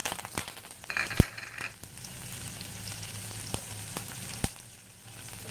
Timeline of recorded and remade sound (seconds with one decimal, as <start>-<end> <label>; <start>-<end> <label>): 0.0-3.3 remade; 3.3-4.0 recorded; 4.0-4.8 remade; 4.8-5.5 recorded